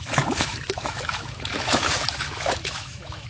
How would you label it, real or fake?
fake